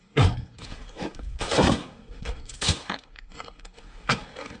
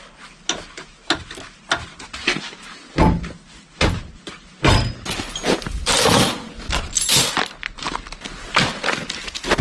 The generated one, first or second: first